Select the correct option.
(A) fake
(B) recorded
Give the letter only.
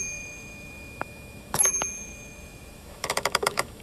A